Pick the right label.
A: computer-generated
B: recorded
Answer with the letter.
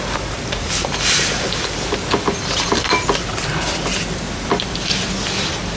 A